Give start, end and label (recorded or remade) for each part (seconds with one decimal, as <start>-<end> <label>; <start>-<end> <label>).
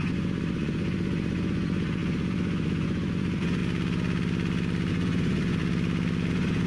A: 0.0-3.6 remade; 3.6-4.9 recorded; 4.9-5.6 remade; 5.6-6.3 recorded; 6.3-6.7 remade